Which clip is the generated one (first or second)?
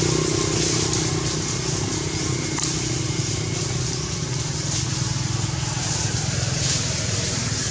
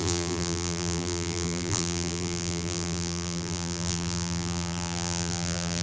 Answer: second